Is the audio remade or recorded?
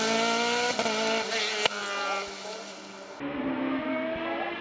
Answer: recorded